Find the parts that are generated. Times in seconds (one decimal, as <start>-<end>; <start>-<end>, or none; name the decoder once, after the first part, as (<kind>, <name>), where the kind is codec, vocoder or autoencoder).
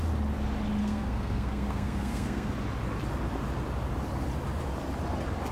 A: 0.8-2.5 (codec, SNAC)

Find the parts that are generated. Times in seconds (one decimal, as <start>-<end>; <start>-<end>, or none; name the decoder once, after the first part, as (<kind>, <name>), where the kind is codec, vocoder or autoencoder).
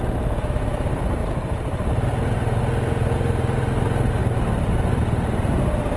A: 1.2-2.6 (vocoder, BigVGAN v2)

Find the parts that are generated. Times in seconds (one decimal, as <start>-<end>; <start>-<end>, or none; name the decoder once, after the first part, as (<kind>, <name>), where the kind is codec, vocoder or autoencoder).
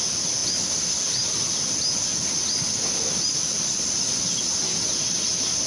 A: none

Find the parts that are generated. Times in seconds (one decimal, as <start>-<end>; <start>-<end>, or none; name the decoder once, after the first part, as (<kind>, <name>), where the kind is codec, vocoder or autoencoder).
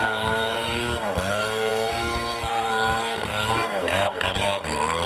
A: 0.0-5.1 (codec, SNAC)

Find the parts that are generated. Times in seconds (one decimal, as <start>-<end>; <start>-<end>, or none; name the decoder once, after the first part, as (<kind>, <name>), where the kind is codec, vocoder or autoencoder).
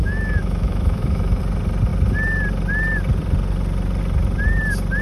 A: 0.0-1.4 (autoencoder, DAC-VAE)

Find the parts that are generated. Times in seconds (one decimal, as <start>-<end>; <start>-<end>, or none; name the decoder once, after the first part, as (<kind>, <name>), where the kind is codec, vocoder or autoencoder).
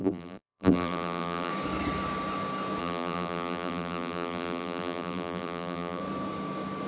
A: 0.0-1.5 (vocoder, BigVGAN v2); 2.8-6.0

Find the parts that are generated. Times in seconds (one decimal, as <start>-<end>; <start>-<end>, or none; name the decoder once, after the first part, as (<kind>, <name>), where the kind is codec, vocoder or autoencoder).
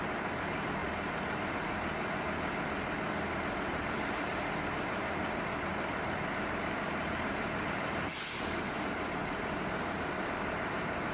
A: 0.8-1.5 (vocoder, BigVGAN v2); 5.7-6.6; 9.2-11.1